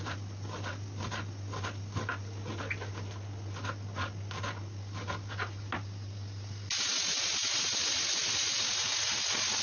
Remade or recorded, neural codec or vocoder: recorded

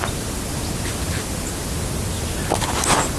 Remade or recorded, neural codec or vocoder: recorded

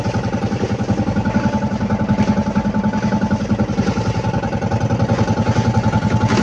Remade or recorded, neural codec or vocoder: recorded